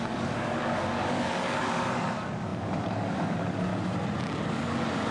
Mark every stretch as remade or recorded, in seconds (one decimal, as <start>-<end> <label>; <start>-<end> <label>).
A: 0.0-3.7 remade; 3.7-4.5 recorded; 4.5-5.1 remade